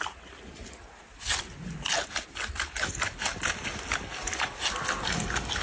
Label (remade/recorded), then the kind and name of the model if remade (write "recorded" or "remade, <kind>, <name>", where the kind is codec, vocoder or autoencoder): recorded